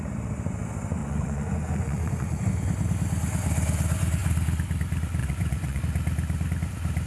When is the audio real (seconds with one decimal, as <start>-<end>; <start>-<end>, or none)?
0.0-1.0; 2.5-5.2; 5.8-7.1